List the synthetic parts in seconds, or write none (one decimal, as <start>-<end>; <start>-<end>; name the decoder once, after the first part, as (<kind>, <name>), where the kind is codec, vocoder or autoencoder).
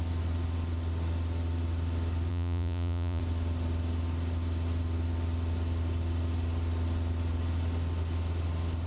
2.3-3.2 (vocoder, Vocos)